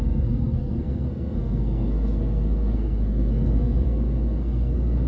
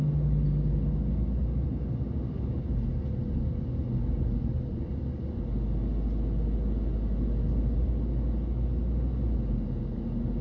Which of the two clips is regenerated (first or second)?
first